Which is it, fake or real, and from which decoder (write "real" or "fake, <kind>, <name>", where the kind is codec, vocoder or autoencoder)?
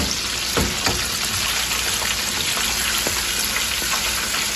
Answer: real